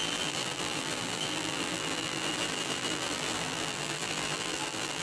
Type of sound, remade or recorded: remade